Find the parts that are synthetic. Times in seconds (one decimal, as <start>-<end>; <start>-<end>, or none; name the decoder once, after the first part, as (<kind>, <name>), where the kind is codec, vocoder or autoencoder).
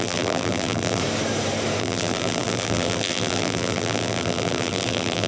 0.0-1.0 (vocoder, BigVGAN v2); 1.8-5.3